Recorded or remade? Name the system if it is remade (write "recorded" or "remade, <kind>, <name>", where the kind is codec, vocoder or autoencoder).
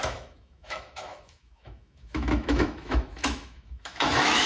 remade, autoencoder, DAC-VAE